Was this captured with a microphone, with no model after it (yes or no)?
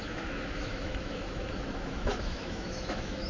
no